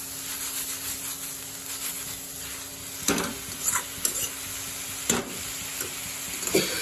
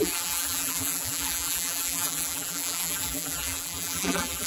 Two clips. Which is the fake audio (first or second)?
second